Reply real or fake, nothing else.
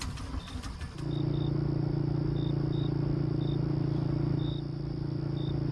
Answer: real